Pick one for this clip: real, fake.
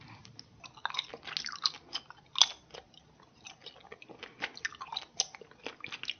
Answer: real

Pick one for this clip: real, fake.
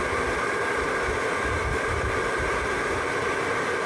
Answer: real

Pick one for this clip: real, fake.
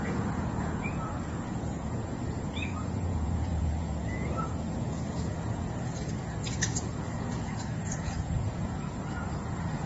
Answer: fake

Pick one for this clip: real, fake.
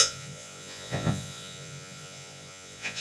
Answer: fake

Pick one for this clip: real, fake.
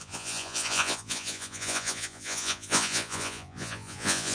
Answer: fake